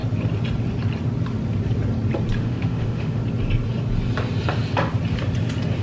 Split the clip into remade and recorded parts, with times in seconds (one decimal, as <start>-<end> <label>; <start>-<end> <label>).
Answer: 0.0-2.4 recorded; 2.4-3.2 remade; 3.2-5.8 recorded